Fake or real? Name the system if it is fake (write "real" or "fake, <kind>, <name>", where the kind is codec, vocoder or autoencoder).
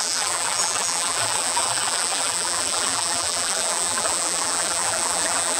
fake, vocoder, BigVGAN v2